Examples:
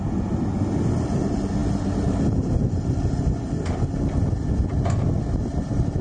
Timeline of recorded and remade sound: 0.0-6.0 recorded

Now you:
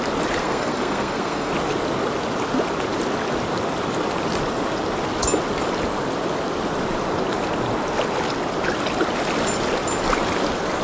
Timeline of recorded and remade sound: 0.0-0.4 recorded; 0.4-1.5 remade; 1.5-10.8 recorded

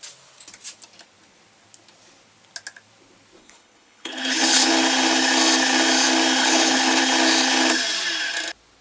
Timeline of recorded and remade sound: 0.0-3.4 recorded; 3.4-4.7 remade; 4.7-6.4 recorded; 6.4-7.0 remade; 7.0-8.8 recorded

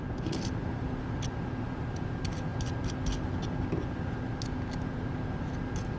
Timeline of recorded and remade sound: 0.0-6.0 recorded

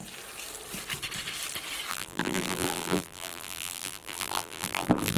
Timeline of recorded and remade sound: 0.0-1.9 recorded; 1.9-5.2 remade